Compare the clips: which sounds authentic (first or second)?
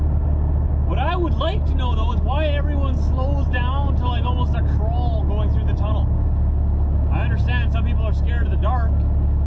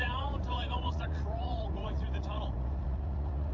first